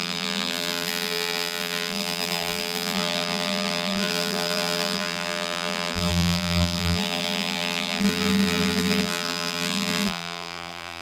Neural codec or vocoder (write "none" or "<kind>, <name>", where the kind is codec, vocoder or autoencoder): vocoder, BigVGAN v2